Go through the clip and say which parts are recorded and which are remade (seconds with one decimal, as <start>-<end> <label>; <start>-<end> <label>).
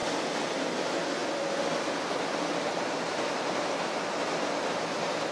0.0-1.2 recorded; 1.2-3.5 remade; 3.5-5.3 recorded